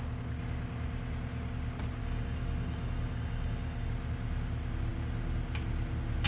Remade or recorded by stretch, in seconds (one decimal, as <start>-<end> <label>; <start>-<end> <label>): 0.0-2.0 recorded; 2.0-3.9 remade; 3.9-6.3 recorded